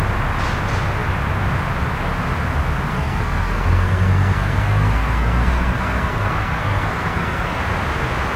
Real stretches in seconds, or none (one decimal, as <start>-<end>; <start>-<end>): 0.0-2.9; 7.6-8.4